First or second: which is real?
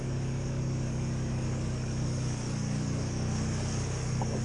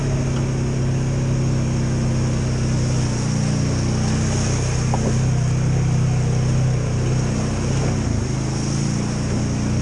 second